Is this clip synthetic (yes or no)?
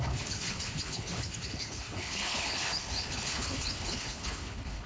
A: yes